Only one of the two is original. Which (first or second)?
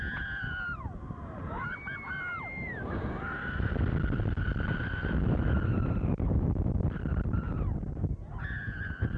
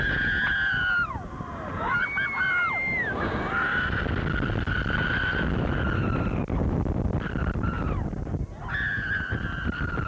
second